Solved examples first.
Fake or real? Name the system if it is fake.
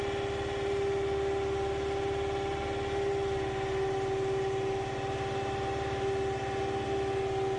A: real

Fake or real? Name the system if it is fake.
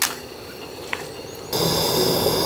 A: real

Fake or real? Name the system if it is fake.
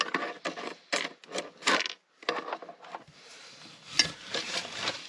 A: real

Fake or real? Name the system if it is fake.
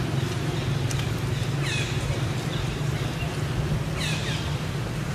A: real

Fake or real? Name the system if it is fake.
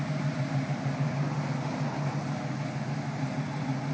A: real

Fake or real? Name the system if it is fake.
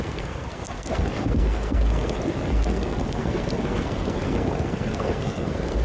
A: fake, codec, SNAC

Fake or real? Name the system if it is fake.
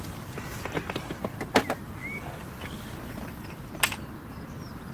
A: real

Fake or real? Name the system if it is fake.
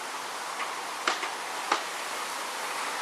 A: real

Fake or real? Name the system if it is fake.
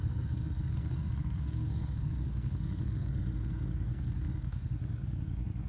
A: fake, codec, SNAC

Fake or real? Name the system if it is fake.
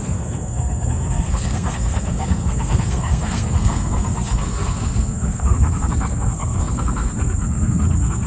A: fake, codec, SNAC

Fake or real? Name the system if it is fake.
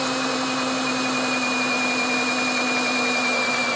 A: real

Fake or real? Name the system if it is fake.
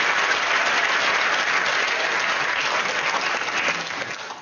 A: real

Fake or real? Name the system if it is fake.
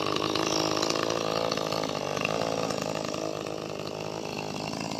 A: real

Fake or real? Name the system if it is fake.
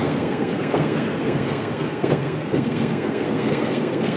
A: fake, codec, SNAC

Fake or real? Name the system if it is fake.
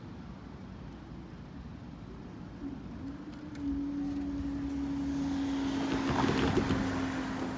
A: real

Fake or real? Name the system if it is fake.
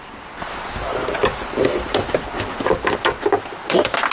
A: real